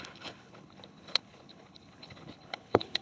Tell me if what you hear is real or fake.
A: fake